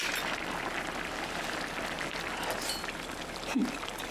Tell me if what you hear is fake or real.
real